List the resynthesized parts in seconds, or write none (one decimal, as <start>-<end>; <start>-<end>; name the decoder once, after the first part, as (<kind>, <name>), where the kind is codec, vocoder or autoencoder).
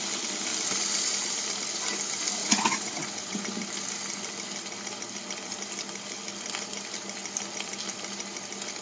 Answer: 2.4-3.4 (vocoder, Vocos)